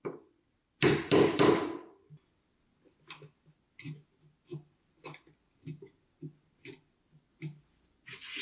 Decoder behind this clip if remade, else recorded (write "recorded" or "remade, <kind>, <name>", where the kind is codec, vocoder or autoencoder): recorded